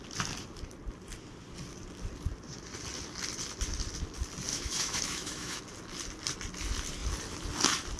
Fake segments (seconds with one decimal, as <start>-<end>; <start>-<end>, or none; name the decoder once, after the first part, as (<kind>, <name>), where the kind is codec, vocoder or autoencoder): 4.5-5.6 (autoencoder, DAC-VAE)